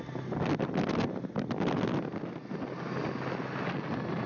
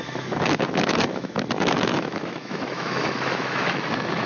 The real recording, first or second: first